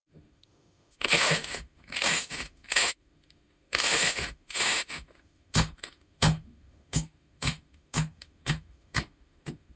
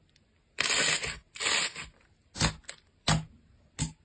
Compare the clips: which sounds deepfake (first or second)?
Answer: first